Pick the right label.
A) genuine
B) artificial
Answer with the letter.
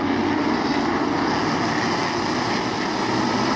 A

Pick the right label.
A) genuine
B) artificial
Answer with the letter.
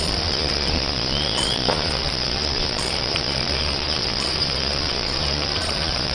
B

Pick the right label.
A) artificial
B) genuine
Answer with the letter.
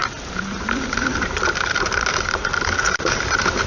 A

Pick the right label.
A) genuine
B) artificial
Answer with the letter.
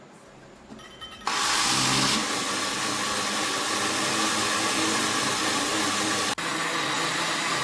A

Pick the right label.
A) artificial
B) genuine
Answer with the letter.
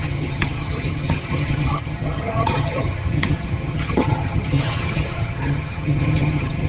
A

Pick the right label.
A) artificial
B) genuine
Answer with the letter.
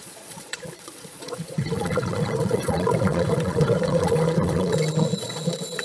A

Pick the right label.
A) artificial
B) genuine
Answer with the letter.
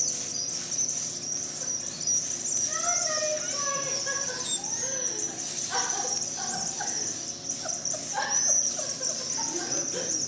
B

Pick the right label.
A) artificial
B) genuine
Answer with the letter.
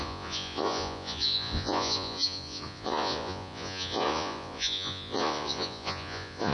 A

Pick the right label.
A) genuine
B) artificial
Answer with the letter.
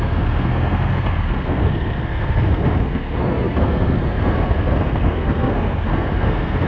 B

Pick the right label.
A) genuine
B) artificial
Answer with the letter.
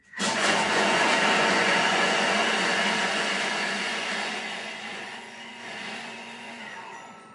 B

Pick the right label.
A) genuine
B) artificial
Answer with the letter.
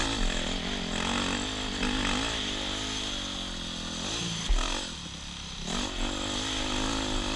A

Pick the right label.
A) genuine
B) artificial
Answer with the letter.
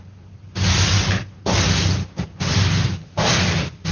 A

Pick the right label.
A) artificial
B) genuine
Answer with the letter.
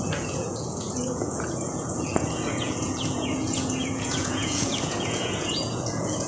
A